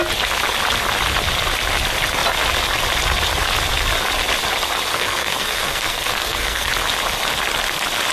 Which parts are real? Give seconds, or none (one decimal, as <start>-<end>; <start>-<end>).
0.0-4.9; 6.7-8.1